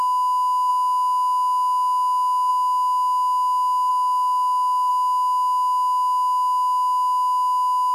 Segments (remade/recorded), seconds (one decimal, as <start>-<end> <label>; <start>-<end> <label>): 0.0-3.9 recorded; 3.9-4.9 remade; 4.9-7.9 recorded